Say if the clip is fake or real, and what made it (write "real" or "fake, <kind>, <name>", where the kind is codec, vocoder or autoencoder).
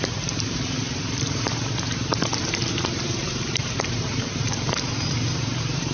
fake, vocoder, BigVGAN v2